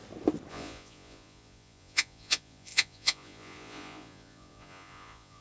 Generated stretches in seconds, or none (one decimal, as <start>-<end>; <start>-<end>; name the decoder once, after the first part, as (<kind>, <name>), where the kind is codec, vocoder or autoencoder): 0.5-5.4 (vocoder, Vocos)